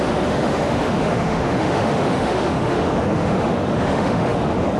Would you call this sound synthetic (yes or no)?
yes